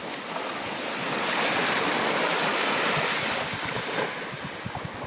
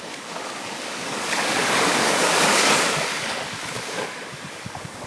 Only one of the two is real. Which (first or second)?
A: first